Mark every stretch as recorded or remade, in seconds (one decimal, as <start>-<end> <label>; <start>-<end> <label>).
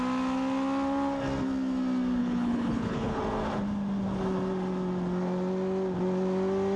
0.0-2.2 recorded; 2.2-3.2 remade; 3.2-6.8 recorded